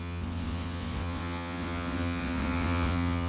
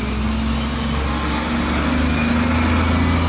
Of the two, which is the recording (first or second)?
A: second